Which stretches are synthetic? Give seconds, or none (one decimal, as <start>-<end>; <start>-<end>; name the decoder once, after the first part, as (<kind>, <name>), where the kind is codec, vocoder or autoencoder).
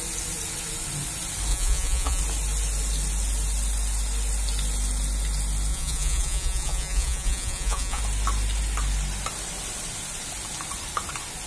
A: 1.5-2.2 (vocoder, Vocos); 5.7-8.0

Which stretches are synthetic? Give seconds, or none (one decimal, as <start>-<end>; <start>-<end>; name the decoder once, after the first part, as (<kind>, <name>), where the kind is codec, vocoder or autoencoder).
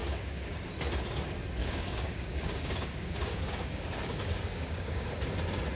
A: 0.0-0.7 (codec, DAC); 1.6-5.1